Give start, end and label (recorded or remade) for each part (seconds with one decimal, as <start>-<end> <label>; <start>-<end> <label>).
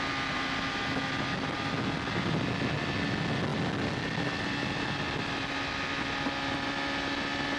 0.0-7.6 recorded